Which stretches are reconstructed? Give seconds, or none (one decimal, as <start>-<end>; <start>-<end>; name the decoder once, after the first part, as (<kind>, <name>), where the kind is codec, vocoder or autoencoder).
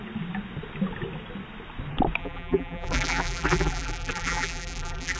2.2-5.2 (vocoder, BigVGAN v2)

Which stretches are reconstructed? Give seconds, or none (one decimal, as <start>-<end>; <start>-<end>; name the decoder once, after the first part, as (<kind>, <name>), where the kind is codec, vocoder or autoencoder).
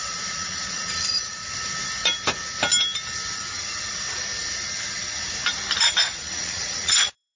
0.0-1.4 (vocoder, Vocos); 5.8-7.4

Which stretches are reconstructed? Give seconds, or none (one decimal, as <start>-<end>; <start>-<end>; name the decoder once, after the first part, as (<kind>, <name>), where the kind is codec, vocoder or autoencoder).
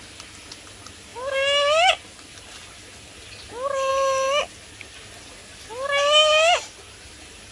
none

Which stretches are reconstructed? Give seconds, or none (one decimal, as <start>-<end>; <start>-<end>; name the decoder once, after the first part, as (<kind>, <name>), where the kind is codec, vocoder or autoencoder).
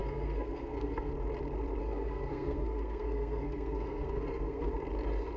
0.0-1.1 (codec, SNAC); 1.8-4.7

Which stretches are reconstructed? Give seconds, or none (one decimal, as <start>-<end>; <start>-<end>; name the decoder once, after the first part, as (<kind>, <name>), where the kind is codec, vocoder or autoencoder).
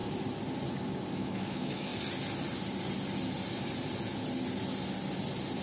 1.1-1.9 (autoencoder, DAC-VAE)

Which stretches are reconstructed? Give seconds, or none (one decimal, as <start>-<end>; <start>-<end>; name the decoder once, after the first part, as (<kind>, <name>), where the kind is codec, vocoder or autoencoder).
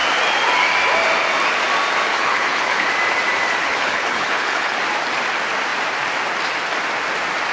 2.1-2.9 (codec, HILCodec); 3.6-4.8